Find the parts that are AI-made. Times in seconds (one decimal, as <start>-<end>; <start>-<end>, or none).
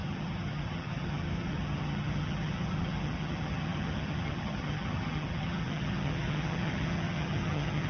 0.0-7.9